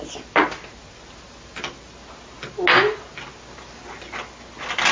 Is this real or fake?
real